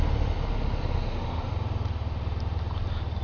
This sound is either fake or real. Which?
real